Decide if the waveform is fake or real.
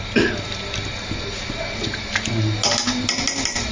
real